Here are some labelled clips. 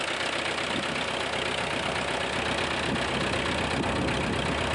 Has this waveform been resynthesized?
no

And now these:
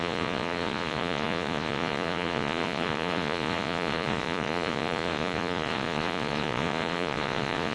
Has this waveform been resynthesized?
yes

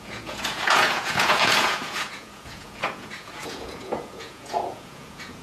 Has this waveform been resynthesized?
yes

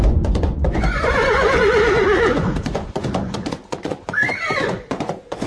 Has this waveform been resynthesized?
yes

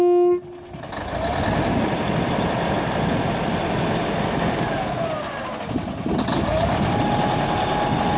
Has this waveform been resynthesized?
no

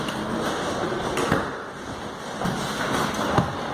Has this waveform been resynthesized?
no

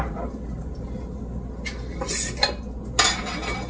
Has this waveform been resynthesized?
no